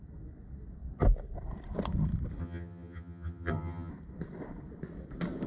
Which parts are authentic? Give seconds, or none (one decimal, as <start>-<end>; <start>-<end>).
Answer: 0.0-2.4; 3.9-5.5